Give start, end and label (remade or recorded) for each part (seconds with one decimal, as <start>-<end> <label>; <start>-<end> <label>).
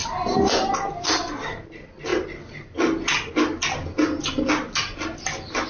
0.0-5.7 recorded